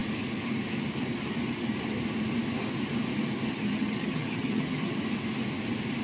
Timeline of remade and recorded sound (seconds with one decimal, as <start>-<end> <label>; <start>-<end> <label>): 0.0-3.5 recorded; 3.5-5.0 remade; 5.0-6.0 recorded